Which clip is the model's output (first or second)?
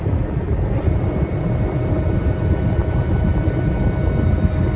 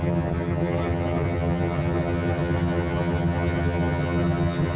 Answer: second